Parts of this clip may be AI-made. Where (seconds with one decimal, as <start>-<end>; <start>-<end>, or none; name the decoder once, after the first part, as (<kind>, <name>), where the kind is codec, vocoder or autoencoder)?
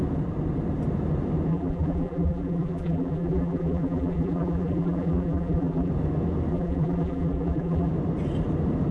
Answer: 1.5-5.9 (vocoder, BigVGAN v2); 6.5-7.9